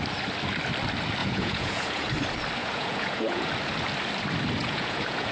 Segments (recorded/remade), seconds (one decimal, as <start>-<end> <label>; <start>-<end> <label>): 0.0-1.2 recorded; 1.2-2.1 remade; 2.1-2.6 recorded; 2.6-3.5 remade; 3.5-4.6 recorded; 4.6-5.3 remade